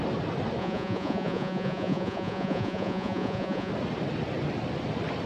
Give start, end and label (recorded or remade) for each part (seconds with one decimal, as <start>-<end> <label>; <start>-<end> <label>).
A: 0.0-0.6 recorded; 0.6-3.7 remade; 3.7-5.3 recorded